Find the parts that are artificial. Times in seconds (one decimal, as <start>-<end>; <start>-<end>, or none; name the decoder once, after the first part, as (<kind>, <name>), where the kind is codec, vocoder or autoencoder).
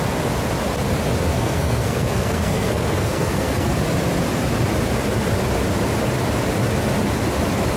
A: 1.3-3.7 (codec, SNAC)